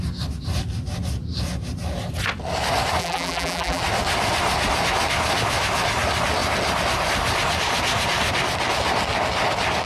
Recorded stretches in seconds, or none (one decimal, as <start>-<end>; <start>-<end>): 0.0-3.0; 3.8-9.9